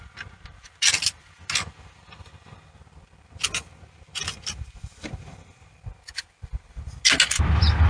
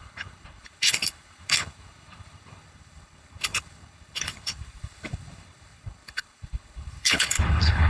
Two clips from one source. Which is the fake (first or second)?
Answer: second